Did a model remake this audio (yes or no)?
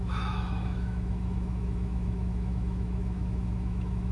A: yes